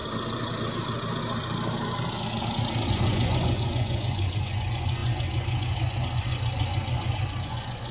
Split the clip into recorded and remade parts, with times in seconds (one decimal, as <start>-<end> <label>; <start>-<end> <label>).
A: 0.0-2.9 recorded; 2.9-7.9 remade

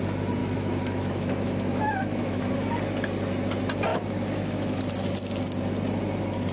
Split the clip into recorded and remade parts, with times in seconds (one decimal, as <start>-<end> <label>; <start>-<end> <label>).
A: 0.0-0.4 recorded; 0.4-2.5 remade; 2.5-3.9 recorded; 3.9-4.8 remade; 4.8-6.5 recorded

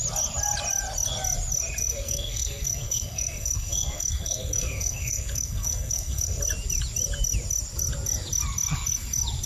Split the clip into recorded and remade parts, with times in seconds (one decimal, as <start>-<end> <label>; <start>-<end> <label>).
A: 0.0-1.8 recorded; 1.8-6.4 remade; 6.4-9.5 recorded

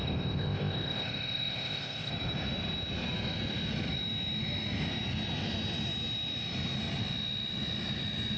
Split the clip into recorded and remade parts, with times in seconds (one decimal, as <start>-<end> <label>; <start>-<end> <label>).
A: 0.0-2.1 remade; 2.1-8.4 recorded

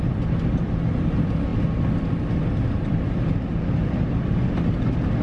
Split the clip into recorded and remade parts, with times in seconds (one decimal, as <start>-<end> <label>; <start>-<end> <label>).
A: 0.0-5.2 recorded

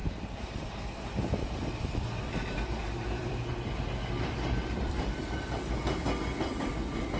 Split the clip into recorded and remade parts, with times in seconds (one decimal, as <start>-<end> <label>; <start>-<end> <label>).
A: 0.0-2.8 recorded; 2.8-5.2 remade; 5.2-7.2 recorded

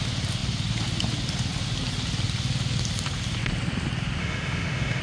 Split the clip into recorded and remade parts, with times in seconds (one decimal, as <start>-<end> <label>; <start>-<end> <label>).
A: 0.0-4.2 recorded; 4.2-5.0 remade